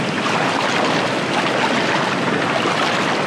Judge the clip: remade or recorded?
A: recorded